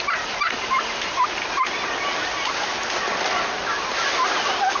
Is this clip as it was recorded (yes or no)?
yes